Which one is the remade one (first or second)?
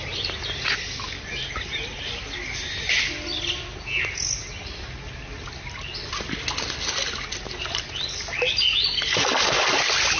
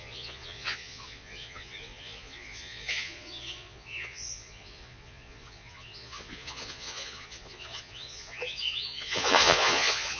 second